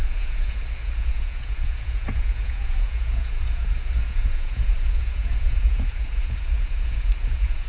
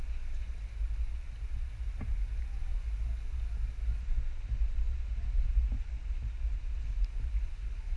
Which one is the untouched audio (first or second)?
second